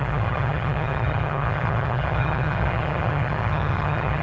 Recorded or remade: remade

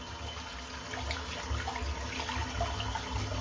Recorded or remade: recorded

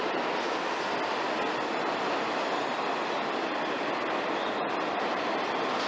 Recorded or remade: recorded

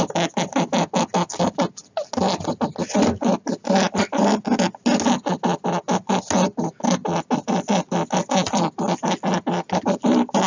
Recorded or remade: recorded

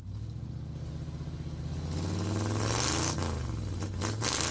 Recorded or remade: recorded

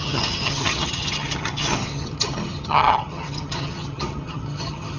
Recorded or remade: remade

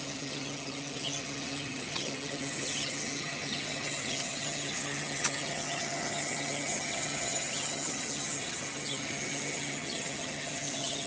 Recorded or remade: remade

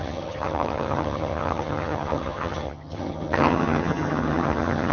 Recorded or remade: remade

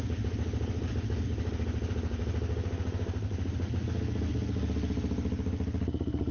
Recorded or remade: recorded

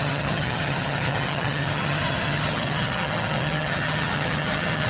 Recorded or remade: remade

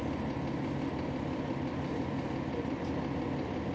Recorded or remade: recorded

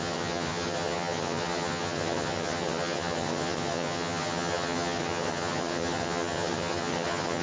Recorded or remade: remade